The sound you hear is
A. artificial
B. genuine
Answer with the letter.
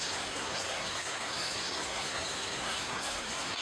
A